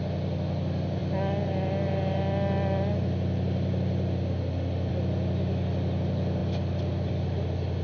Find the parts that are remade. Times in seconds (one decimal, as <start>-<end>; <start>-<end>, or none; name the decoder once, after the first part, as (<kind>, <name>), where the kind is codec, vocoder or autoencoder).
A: none